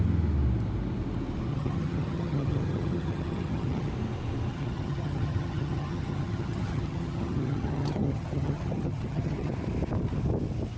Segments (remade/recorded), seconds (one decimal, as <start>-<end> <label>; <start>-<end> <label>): 0.0-1.5 recorded; 1.5-3.9 remade; 3.9-4.5 recorded; 4.5-9.5 remade; 9.5-10.8 recorded